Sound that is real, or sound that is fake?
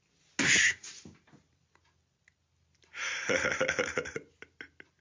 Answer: real